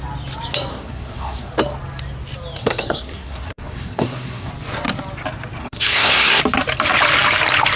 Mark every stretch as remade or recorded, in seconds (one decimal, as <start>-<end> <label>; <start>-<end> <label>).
0.0-0.7 recorded; 0.7-1.5 remade; 1.5-2.6 recorded; 2.6-4.5 remade; 4.5-5.6 recorded; 5.6-6.4 remade; 6.4-7.8 recorded